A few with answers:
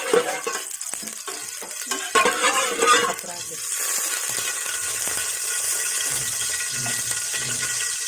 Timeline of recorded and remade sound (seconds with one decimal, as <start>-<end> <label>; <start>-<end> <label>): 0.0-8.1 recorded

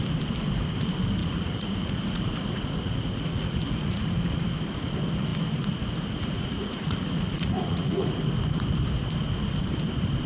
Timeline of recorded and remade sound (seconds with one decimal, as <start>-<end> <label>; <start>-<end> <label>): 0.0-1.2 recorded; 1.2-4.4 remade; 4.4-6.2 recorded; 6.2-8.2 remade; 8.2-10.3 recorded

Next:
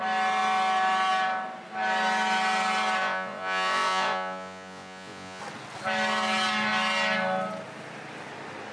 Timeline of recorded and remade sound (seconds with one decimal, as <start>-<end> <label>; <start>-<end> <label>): 0.0-3.0 recorded; 3.0-5.4 remade; 5.4-8.7 recorded

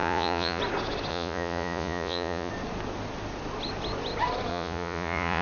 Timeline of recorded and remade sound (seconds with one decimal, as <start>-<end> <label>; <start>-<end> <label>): 0.0-0.6 remade; 0.6-1.1 recorded; 1.1-2.5 remade; 2.5-4.5 recorded; 4.5-5.4 remade

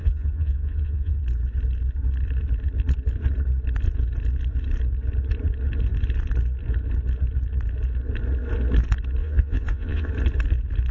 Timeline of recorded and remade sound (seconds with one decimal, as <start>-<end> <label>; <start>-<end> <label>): 0.0-1.2 remade; 1.2-9.2 recorded; 9.2-10.1 remade; 10.1-10.9 recorded

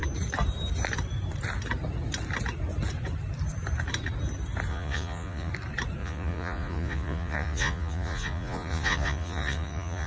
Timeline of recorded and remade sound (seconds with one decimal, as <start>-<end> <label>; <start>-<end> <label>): 0.0-4.7 recorded; 4.7-5.5 remade; 5.5-6.0 recorded; 6.0-10.1 remade

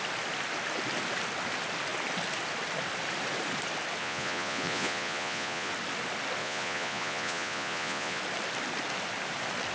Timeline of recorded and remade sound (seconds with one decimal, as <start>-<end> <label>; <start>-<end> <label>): 0.0-4.0 recorded; 4.0-5.7 remade; 5.7-6.4 recorded; 6.4-8.2 remade; 8.2-9.7 recorded